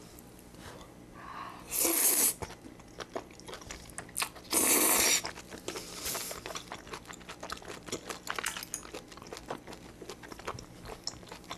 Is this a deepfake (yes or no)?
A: no